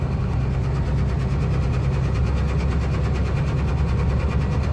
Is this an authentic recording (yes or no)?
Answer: yes